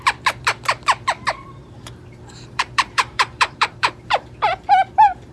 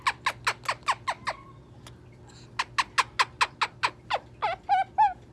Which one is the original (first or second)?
second